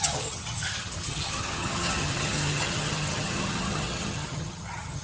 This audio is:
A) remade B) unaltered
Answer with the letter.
A